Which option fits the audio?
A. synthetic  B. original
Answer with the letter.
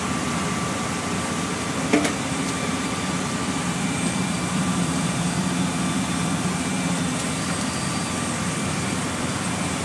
A